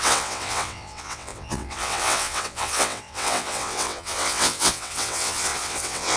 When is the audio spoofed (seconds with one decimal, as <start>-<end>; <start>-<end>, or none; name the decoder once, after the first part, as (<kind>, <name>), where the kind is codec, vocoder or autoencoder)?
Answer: 0.0-6.2 (vocoder, WaveNeXt)